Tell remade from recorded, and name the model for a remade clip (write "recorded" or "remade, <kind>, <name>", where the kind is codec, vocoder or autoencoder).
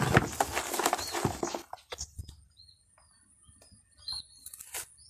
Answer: recorded